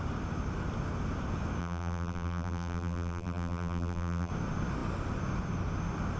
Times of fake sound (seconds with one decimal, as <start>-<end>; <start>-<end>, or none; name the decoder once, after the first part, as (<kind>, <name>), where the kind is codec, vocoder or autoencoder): 1.6-4.3 (vocoder, BigVGAN v2)